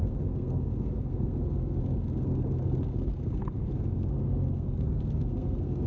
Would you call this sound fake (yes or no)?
yes